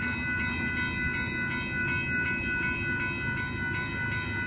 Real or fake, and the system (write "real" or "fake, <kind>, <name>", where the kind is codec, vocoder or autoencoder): real